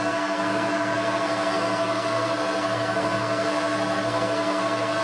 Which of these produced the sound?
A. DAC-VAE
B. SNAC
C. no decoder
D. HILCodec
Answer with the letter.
B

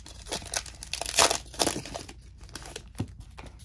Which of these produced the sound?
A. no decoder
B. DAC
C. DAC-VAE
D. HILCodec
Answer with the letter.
A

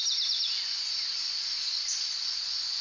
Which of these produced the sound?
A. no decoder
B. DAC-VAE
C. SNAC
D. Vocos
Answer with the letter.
A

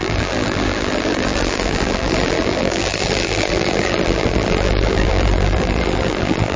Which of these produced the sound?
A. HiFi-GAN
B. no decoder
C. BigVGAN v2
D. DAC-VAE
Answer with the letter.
C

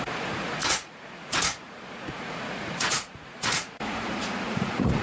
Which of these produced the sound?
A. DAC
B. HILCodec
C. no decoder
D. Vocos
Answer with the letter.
D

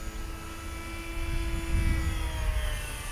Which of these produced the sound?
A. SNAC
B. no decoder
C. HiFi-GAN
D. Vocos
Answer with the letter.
B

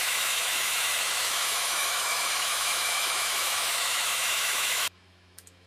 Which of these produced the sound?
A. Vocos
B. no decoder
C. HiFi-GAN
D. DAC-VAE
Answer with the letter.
D